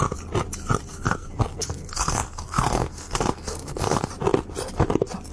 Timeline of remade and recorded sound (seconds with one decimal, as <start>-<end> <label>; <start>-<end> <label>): 0.0-0.9 recorded; 0.9-4.1 remade; 4.1-5.3 recorded